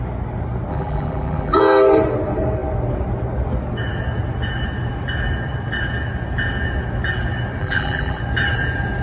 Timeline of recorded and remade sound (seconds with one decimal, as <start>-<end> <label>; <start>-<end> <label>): 0.0-0.7 recorded; 0.7-1.6 remade; 1.6-7.6 recorded; 7.6-8.2 remade; 8.2-9.0 recorded